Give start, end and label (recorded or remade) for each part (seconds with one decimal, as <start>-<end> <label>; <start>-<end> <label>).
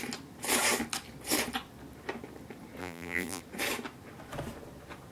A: 0.0-2.8 recorded; 2.8-3.4 remade; 3.4-5.1 recorded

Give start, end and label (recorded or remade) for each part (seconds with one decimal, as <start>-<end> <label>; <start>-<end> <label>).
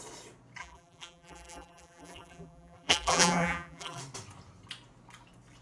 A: 0.0-0.6 recorded; 0.6-4.0 remade; 4.0-5.6 recorded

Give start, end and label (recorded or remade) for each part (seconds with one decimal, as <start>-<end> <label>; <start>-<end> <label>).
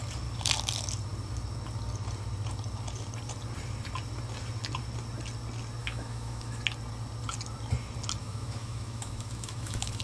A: 0.0-5.8 recorded; 5.8-6.6 remade; 6.6-8.2 recorded; 8.2-10.0 remade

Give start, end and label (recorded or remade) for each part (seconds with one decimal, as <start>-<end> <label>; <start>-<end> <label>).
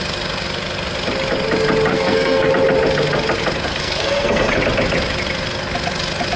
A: 0.0-1.9 recorded; 1.9-2.5 remade; 2.5-3.7 recorded; 3.7-4.5 remade; 4.5-6.4 recorded